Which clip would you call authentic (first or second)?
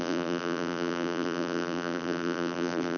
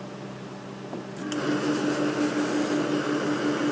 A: second